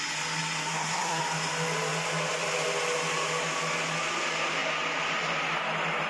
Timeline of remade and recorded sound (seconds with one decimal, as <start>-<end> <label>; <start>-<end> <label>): 0.0-0.7 recorded; 0.7-1.2 remade; 1.2-6.1 recorded